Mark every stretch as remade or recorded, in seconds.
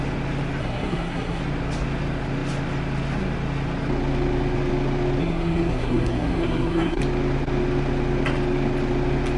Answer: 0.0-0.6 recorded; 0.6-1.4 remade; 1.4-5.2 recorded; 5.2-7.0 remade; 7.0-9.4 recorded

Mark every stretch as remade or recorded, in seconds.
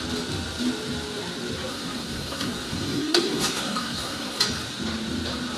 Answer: 0.0-1.7 recorded; 1.7-4.4 remade; 4.4-5.6 recorded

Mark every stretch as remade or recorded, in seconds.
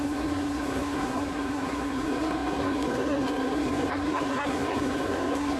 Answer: 0.0-5.6 remade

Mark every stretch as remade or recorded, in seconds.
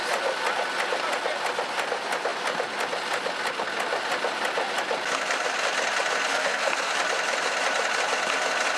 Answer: 0.0-6.3 recorded; 6.3-6.9 remade; 6.9-8.8 recorded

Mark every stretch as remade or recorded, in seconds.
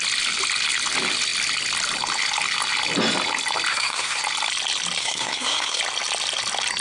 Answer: 0.0-3.7 recorded; 3.7-4.2 remade; 4.2-5.0 recorded; 5.0-5.8 remade; 5.8-6.8 recorded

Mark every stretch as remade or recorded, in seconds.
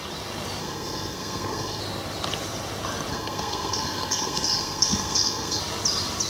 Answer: 0.0-0.6 recorded; 0.6-1.8 remade; 1.8-3.1 recorded; 3.1-5.6 remade; 5.6-6.3 recorded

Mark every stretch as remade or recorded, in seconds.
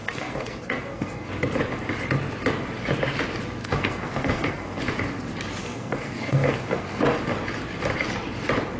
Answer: 0.0-1.3 remade; 1.3-3.6 recorded; 3.6-4.8 remade; 4.8-5.6 recorded; 5.6-7.0 remade; 7.0-8.8 recorded